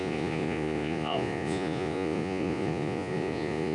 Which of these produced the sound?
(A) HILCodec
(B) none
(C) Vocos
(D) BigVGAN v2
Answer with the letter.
C